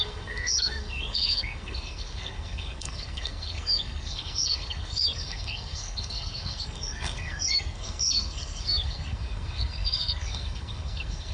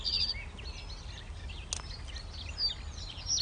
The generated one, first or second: first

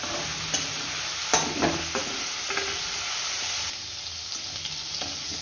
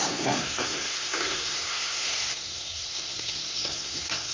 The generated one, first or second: second